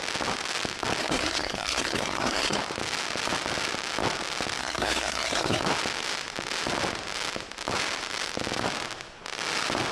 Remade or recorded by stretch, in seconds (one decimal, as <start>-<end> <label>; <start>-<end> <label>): 0.0-1.0 recorded; 1.0-2.6 remade; 2.6-4.6 recorded; 4.6-5.6 remade; 5.6-9.9 recorded